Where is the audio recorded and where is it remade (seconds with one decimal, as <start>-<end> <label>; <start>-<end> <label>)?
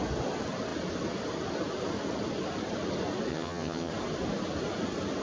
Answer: 0.0-3.3 recorded; 3.3-3.9 remade; 3.9-5.2 recorded